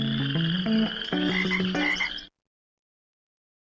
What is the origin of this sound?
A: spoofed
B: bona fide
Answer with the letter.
B